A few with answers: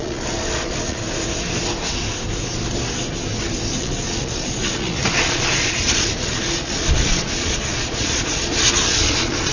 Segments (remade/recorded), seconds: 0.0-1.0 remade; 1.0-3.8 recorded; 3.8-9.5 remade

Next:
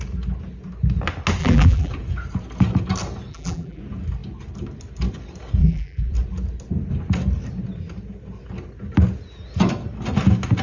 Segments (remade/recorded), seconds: 0.0-1.4 recorded; 1.4-1.9 remade; 1.9-3.3 recorded; 3.3-3.8 remade; 3.8-5.6 recorded; 5.6-6.1 remade; 6.1-10.6 recorded

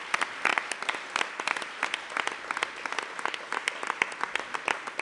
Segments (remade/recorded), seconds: 0.0-0.5 recorded; 0.5-1.2 remade; 1.2-5.0 recorded

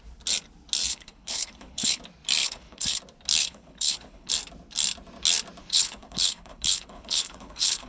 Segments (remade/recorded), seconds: 0.0-0.9 recorded; 0.9-2.0 remade; 2.0-2.4 recorded; 2.4-3.0 remade; 3.0-3.4 recorded; 3.4-4.3 remade; 4.3-5.6 recorded; 5.6-7.9 remade

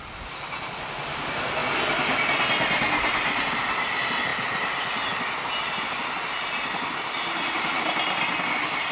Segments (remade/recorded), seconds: 0.0-8.9 recorded

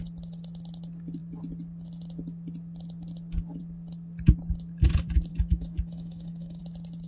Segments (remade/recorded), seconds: 0.0-5.3 recorded; 5.3-6.6 remade; 6.6-7.1 recorded

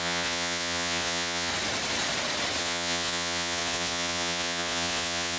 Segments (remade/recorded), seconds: 0.0-1.5 remade; 1.5-2.6 recorded; 2.6-5.4 remade